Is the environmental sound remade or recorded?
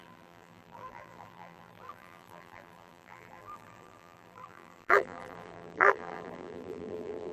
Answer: remade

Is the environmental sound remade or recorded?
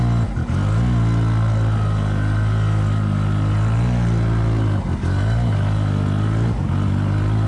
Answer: recorded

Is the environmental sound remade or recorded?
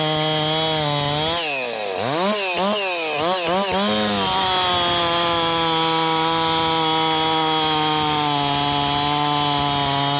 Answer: recorded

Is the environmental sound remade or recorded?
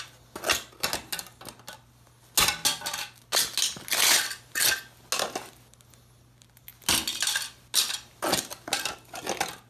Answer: recorded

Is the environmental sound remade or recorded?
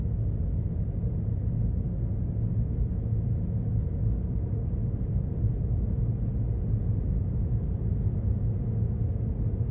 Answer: recorded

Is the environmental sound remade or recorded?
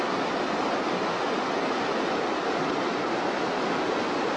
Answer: recorded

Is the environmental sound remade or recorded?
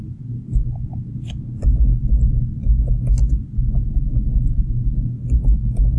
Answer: recorded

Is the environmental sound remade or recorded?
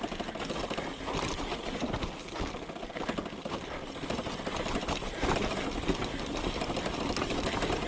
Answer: recorded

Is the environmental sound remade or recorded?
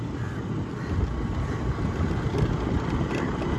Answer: recorded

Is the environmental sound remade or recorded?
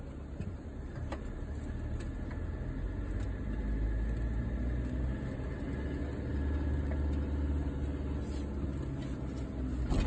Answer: recorded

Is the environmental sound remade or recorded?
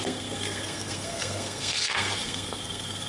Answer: remade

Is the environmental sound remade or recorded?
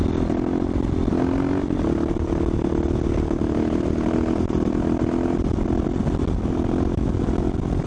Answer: recorded